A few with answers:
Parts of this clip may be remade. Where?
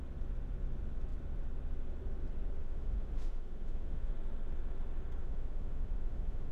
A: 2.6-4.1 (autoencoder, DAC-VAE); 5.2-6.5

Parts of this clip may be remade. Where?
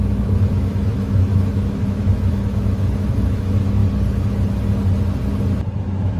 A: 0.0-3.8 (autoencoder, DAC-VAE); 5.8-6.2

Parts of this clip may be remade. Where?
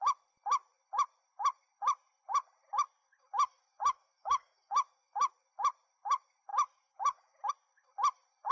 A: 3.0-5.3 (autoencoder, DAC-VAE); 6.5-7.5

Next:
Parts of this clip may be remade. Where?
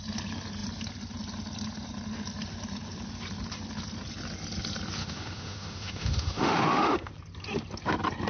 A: 5.0-7.1 (autoencoder, DAC-VAE)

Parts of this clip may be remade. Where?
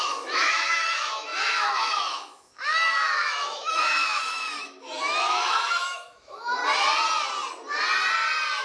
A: 0.0-6.6 (autoencoder, DAC-VAE)